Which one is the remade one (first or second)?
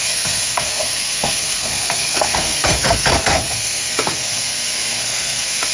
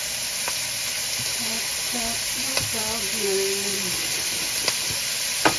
first